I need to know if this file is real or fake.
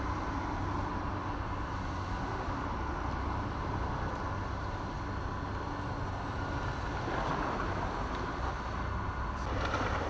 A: real